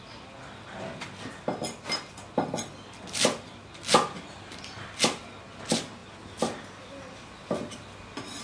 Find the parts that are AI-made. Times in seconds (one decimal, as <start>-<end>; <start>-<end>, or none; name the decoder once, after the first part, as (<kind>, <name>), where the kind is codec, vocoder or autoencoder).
none